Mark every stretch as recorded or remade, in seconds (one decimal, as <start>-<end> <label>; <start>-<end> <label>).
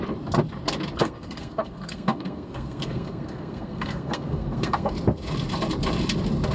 0.0-1.0 recorded; 1.0-4.9 remade; 4.9-6.5 recorded